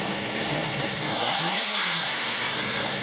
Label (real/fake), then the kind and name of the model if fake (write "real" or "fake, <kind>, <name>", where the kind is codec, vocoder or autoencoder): fake, codec, SNAC